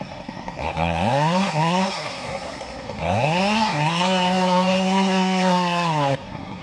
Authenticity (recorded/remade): remade